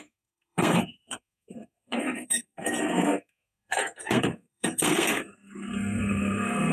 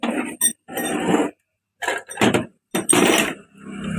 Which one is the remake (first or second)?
first